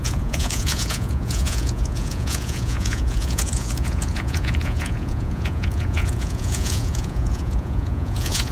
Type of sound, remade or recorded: remade